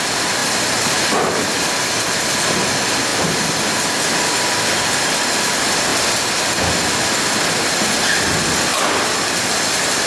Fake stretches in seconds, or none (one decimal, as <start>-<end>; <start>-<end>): none